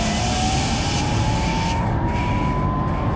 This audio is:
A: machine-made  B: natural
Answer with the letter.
B